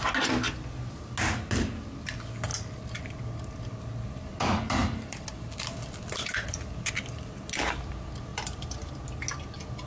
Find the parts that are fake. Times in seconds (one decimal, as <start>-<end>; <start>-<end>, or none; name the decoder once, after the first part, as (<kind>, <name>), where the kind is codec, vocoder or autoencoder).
2.5-3.0 (vocoder, BigVGAN v2); 4.8-7.1; 8.3-8.9